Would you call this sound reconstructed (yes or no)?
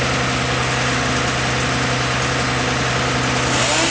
no